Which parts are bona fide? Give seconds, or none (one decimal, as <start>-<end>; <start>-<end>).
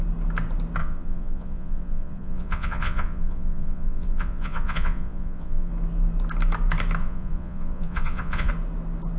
0.0-0.8; 5.7-7.0; 8.5-9.2